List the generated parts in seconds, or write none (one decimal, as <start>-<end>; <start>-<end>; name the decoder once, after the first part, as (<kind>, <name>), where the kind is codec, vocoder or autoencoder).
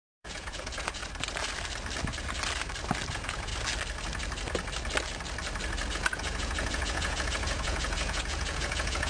0.0-1.0 (vocoder, Vocos); 3.1-3.5; 5.9-9.1